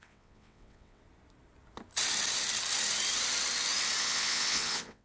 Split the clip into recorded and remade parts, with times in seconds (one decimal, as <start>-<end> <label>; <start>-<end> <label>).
0.0-1.0 remade; 1.0-4.0 recorded; 4.0-5.0 remade